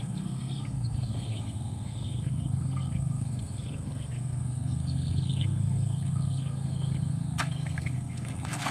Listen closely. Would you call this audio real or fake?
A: fake